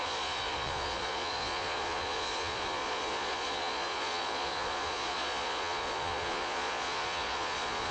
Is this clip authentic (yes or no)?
no